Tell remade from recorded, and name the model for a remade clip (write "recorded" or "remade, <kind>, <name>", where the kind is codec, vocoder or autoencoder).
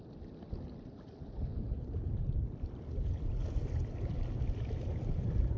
recorded